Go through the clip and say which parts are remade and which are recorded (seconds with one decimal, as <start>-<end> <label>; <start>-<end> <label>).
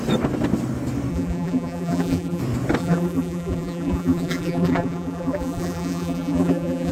0.0-1.1 recorded; 1.1-2.4 remade; 2.4-2.8 recorded; 2.8-6.9 remade